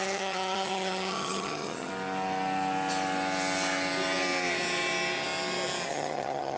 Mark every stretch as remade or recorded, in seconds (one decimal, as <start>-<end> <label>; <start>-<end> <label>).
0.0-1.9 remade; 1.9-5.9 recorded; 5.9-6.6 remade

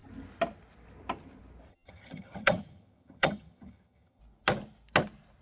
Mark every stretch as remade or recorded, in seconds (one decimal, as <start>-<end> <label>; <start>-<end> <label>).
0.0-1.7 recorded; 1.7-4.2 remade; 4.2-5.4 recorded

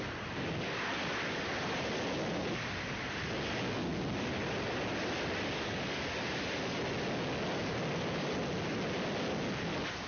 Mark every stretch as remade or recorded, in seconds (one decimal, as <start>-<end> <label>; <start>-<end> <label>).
0.0-10.1 recorded

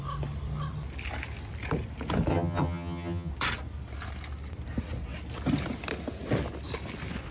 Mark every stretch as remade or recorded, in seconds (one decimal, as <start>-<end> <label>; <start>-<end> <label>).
0.0-2.3 recorded; 2.3-3.3 remade; 3.3-7.3 recorded